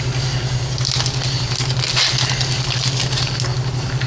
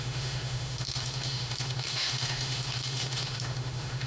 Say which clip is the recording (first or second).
first